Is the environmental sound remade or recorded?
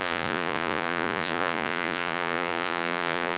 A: remade